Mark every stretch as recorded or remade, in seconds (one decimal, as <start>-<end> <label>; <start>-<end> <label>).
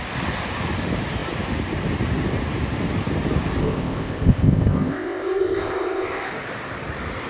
0.0-3.6 recorded; 3.6-6.3 remade; 6.3-7.3 recorded